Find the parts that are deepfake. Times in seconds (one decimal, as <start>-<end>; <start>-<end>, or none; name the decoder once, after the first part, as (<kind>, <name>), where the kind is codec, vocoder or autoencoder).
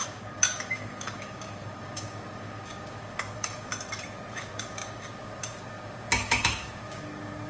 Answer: 0.0-3.7 (codec, DAC); 4.3-7.5